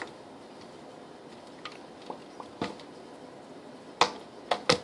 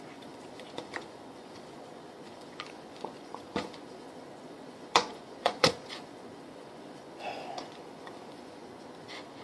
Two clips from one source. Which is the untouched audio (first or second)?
first